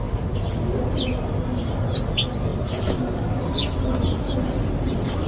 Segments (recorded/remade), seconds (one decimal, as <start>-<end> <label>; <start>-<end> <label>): 0.0-5.3 recorded